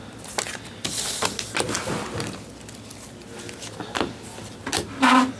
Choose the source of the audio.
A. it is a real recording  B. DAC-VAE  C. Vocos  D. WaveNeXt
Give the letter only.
A